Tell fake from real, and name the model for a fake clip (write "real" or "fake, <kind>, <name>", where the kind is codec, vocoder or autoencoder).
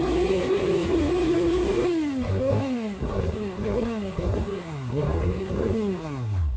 fake, codec, SNAC